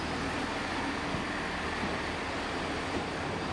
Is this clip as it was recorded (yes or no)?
yes